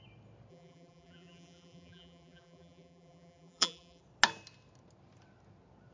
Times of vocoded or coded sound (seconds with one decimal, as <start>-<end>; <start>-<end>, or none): 0.5-4.0